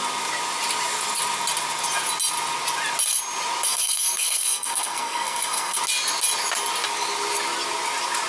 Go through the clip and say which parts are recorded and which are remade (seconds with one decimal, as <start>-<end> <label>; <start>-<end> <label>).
0.0-3.7 recorded; 3.7-5.8 remade; 5.8-8.3 recorded